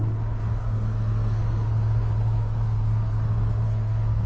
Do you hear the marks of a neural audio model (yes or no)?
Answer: yes